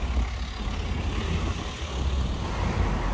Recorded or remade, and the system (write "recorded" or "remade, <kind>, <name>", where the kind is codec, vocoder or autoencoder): recorded